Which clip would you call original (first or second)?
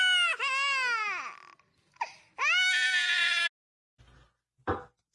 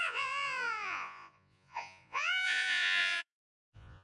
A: first